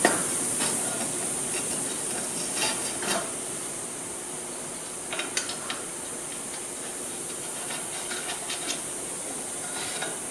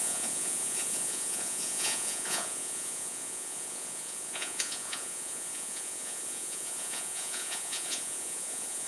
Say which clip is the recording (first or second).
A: first